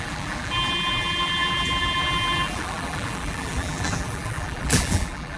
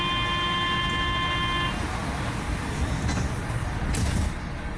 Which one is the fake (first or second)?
first